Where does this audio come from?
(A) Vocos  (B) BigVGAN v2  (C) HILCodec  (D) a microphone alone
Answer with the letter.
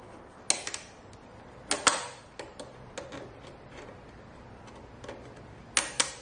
D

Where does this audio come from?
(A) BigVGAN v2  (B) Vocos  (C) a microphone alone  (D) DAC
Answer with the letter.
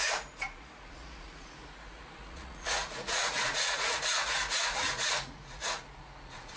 B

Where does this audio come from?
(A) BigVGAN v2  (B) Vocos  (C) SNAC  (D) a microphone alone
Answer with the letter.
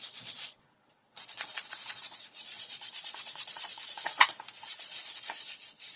B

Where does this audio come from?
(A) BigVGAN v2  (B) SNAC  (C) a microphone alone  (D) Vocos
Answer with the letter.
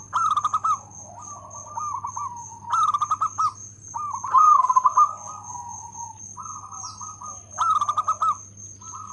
C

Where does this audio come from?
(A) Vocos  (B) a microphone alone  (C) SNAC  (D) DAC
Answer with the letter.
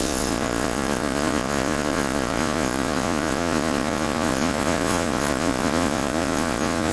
A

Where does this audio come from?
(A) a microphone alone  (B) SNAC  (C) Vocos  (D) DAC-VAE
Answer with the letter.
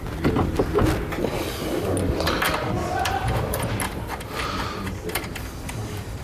A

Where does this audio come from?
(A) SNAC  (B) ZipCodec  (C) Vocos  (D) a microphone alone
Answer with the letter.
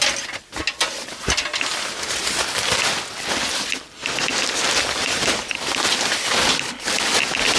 D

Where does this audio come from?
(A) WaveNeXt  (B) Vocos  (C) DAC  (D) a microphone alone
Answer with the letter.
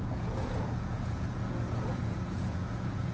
B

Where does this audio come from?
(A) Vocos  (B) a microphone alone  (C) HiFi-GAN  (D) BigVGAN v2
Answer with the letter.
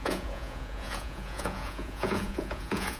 A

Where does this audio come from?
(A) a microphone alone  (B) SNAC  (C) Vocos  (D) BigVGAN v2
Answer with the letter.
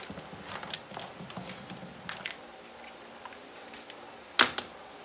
A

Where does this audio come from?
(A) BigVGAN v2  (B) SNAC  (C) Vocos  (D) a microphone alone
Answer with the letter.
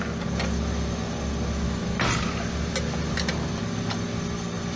D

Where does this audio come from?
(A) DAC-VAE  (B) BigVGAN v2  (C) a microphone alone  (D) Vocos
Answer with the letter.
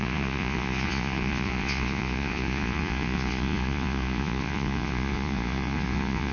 D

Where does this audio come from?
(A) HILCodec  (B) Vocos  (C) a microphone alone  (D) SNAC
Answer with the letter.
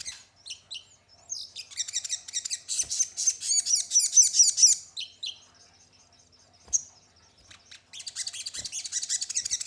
C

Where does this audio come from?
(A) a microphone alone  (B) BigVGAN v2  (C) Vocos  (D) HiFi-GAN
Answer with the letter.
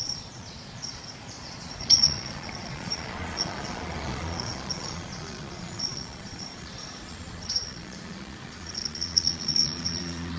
C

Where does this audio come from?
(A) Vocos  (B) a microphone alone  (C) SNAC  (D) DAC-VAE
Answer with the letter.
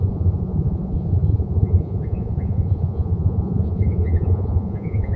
A